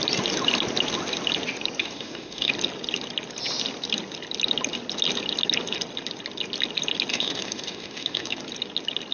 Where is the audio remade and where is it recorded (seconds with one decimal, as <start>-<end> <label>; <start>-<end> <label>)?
0.0-1.8 recorded; 1.8-2.5 remade; 2.5-7.1 recorded; 7.1-8.4 remade; 8.4-9.1 recorded